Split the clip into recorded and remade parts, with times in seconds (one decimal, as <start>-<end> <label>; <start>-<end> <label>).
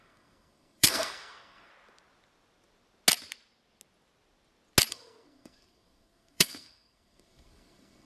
0.0-1.7 remade; 1.7-4.9 recorded; 4.9-8.1 remade